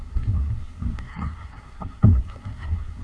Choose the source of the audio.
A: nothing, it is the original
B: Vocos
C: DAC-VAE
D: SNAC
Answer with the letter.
D